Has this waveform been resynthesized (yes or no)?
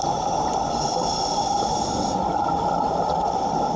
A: no